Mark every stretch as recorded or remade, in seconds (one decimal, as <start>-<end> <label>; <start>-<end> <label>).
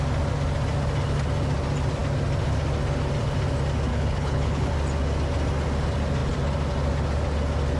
0.0-3.9 recorded; 3.9-4.7 remade; 4.7-7.8 recorded